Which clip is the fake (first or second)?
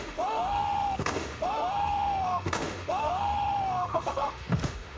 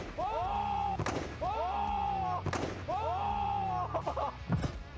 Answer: first